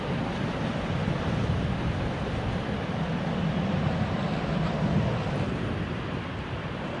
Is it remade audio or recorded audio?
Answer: remade